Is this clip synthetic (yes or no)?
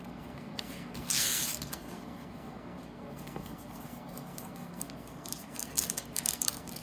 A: yes